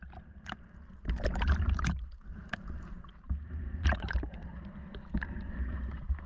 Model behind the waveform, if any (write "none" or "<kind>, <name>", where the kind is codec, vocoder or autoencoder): vocoder, BigVGAN v2